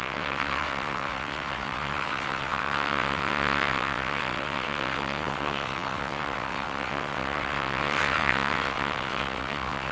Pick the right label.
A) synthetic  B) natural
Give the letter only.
A